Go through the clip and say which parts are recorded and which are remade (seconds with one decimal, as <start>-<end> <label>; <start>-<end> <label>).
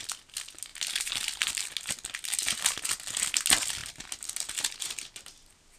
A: 0.0-5.8 recorded